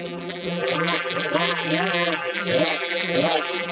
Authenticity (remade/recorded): remade